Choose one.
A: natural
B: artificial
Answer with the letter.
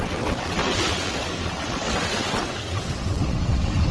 B